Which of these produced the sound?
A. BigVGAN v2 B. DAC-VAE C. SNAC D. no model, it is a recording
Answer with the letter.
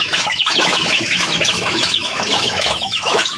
B